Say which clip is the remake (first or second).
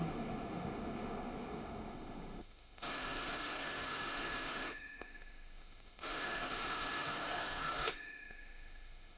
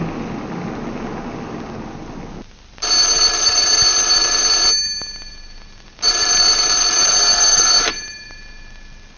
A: first